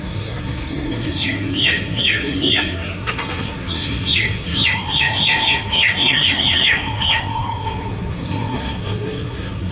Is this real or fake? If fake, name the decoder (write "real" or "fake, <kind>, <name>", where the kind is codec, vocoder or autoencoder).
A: fake, codec, SNAC